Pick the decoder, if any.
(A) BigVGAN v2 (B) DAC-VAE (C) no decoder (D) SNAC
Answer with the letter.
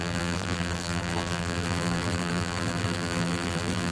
A